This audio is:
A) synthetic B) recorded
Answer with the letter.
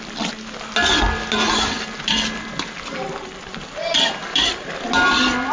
B